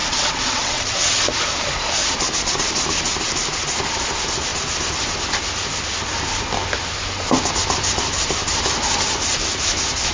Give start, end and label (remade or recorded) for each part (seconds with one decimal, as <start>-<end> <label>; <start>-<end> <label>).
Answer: 0.0-1.3 remade; 1.3-10.1 recorded